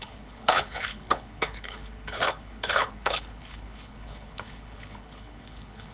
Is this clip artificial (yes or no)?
yes